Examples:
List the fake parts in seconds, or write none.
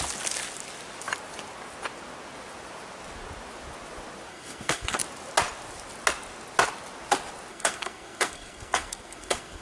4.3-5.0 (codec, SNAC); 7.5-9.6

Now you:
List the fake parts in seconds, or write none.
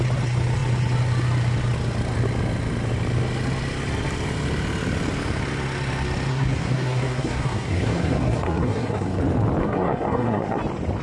6.3-9.2 (codec, SNAC); 9.6-10.6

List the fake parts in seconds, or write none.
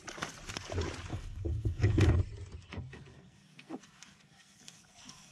1.1-2.2 (codec, SNAC); 2.6-5.3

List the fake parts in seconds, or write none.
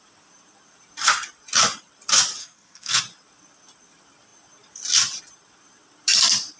2.4-3.0 (codec, SNAC)